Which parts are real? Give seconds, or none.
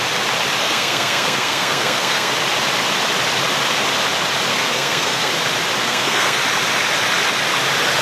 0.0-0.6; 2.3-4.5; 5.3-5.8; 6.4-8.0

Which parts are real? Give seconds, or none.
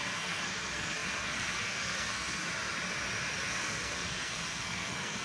2.4-3.3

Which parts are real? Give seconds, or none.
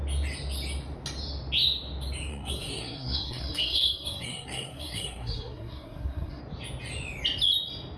0.0-2.3; 6.4-8.0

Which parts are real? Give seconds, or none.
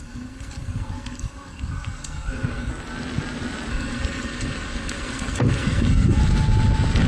2.7-3.7; 6.2-7.1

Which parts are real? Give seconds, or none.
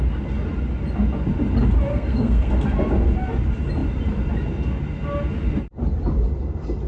0.0-1.9; 2.5-6.9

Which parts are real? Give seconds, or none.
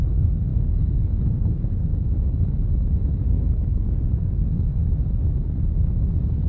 1.9-3.3; 4.8-6.5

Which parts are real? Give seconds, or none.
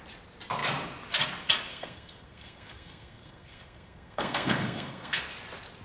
0.0-1.7; 5.2-5.8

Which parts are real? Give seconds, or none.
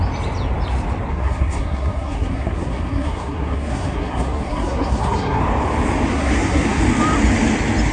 0.0-1.1; 5.4-6.1; 6.8-7.9